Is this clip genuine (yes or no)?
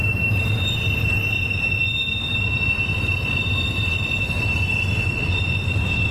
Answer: no